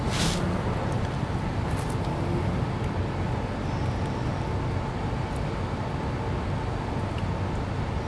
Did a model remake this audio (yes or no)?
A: no